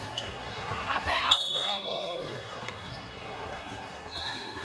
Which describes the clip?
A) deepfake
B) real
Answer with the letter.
A